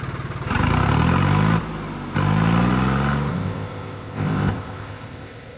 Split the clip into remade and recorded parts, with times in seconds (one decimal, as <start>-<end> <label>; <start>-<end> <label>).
0.0-3.3 recorded; 3.3-5.6 remade